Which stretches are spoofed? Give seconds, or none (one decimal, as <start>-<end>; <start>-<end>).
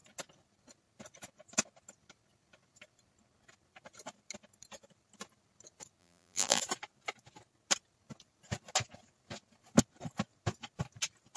6.0-6.6